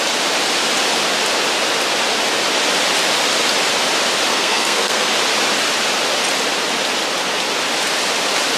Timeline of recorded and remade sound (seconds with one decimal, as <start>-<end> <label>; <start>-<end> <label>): 0.0-4.3 recorded; 4.3-5.1 remade; 5.1-8.6 recorded